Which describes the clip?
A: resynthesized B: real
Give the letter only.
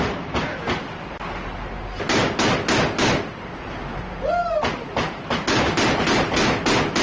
B